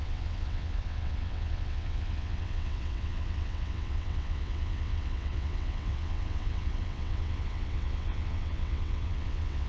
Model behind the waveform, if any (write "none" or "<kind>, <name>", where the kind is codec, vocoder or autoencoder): vocoder, WaveNeXt